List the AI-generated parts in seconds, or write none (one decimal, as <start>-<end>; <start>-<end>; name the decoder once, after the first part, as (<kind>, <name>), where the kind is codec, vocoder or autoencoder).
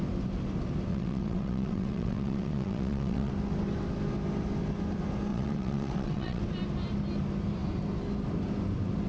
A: 0.9-3.3 (vocoder, WaveNeXt); 5.3-6.4